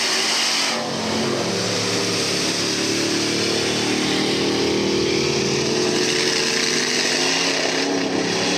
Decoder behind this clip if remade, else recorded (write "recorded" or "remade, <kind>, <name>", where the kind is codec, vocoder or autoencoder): recorded